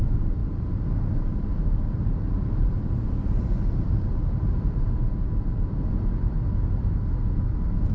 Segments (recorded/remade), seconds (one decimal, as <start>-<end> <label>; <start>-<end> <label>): 0.0-0.4 recorded; 0.4-5.1 remade; 5.1-7.9 recorded